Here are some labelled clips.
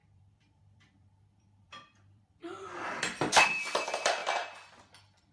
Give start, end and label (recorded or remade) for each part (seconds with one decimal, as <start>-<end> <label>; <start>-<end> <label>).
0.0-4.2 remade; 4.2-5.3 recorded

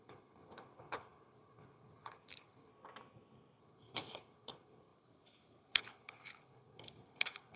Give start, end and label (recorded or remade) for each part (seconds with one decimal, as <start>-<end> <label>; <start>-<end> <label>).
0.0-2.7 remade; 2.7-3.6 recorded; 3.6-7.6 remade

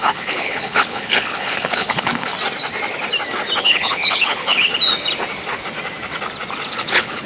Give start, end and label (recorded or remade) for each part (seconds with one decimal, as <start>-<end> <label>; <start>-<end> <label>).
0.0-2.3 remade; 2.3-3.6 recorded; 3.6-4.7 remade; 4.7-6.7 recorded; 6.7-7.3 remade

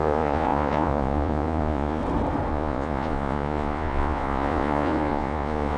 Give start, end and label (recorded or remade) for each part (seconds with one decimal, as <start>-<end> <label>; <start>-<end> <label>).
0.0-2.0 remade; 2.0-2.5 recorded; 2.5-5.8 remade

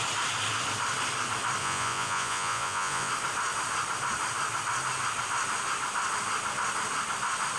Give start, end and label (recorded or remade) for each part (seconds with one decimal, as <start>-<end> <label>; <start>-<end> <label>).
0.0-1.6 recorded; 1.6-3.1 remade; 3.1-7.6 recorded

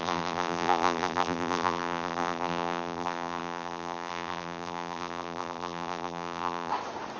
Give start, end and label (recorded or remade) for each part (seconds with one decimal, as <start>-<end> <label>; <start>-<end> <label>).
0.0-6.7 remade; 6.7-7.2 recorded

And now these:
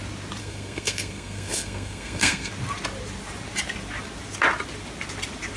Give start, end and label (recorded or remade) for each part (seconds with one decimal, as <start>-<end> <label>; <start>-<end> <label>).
0.0-0.4 recorded; 0.4-2.5 remade; 2.5-5.6 recorded